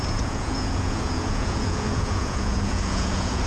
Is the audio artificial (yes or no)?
yes